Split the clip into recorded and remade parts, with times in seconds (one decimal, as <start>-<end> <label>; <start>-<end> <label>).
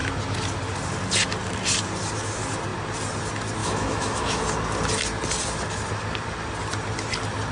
0.0-3.6 recorded; 3.6-4.4 remade; 4.4-7.5 recorded